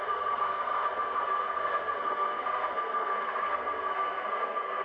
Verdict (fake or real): fake